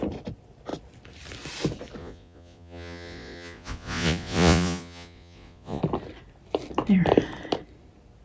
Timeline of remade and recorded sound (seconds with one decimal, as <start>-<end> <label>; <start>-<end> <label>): 0.0-2.0 recorded; 2.0-5.8 remade; 5.8-8.2 recorded